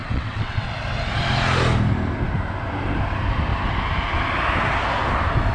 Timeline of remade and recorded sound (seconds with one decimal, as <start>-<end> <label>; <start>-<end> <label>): 0.0-0.7 remade; 0.7-5.5 recorded